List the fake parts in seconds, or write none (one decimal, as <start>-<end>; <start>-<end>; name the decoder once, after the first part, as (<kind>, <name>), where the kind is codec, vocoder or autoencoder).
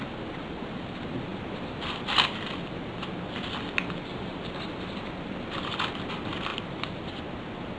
4.1-4.7 (vocoder, BigVGAN v2)